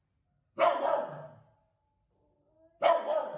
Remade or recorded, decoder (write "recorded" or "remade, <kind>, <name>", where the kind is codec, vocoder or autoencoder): recorded